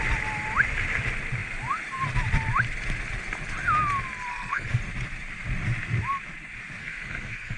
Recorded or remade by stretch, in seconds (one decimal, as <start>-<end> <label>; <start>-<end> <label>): 0.0-4.3 recorded; 4.3-4.8 remade; 4.8-6.8 recorded; 6.8-7.6 remade